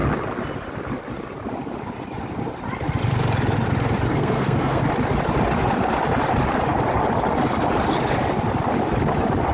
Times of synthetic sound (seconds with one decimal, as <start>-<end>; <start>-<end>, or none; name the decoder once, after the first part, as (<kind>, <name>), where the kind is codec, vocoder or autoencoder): 4.1-4.8 (codec, SNAC)